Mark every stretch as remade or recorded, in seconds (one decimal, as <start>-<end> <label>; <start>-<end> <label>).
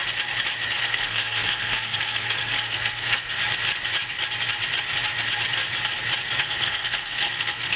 0.0-0.8 recorded; 0.8-3.4 remade; 3.4-6.4 recorded; 6.4-7.8 remade